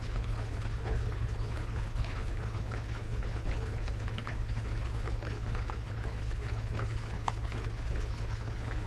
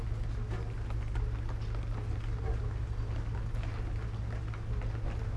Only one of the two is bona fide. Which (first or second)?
second